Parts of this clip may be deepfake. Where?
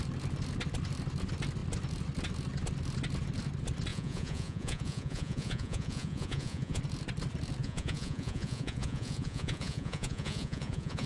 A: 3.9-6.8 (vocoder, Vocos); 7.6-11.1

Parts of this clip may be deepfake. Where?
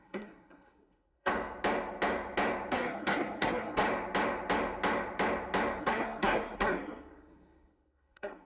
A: 0.0-1.3 (codec, SNAC); 2.7-3.8; 5.8-8.5